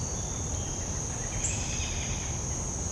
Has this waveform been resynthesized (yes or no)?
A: no